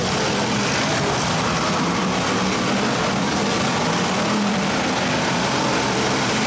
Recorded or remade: remade